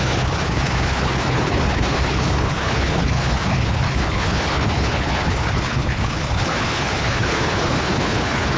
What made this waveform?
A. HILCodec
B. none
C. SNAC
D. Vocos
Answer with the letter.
A